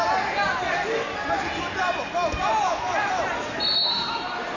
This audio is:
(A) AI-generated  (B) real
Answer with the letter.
B